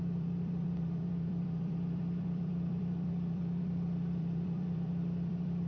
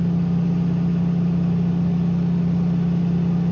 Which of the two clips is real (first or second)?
second